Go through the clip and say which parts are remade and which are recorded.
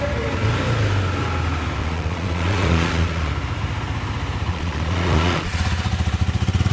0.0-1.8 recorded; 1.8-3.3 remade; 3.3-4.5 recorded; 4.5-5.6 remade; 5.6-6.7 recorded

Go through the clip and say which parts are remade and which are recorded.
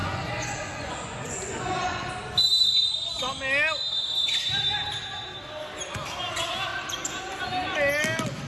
0.0-2.1 remade; 2.1-8.5 recorded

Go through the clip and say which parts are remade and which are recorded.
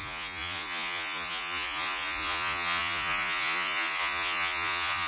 0.0-5.1 remade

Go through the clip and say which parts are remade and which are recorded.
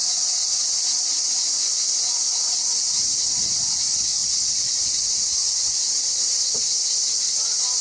0.0-1.7 remade; 1.7-2.2 recorded; 2.2-3.5 remade; 3.5-4.2 recorded; 4.2-6.5 remade; 6.5-7.8 recorded